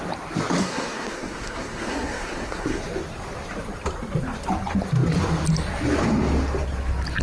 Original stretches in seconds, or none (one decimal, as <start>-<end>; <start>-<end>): 0.0-0.6; 2.8-7.2